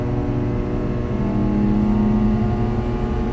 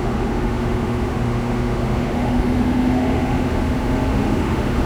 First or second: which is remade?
second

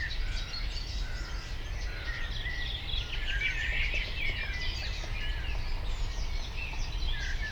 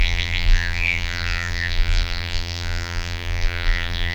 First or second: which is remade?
second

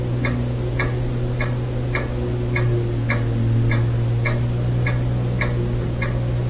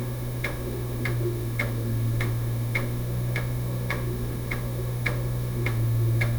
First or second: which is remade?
second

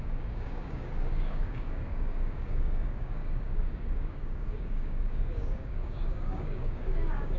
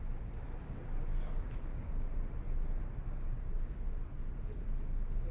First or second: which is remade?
first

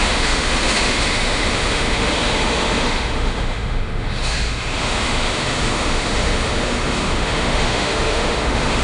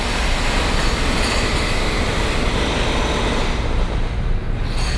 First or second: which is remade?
first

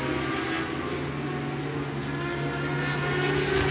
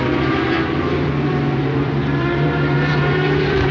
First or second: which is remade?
second